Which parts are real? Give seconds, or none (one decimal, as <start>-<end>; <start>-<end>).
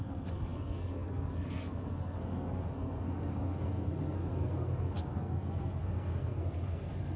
none